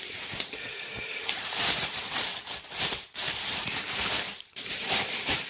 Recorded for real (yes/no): no